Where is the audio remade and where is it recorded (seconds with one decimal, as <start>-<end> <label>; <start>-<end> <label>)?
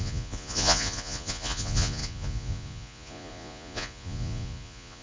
0.0-5.0 remade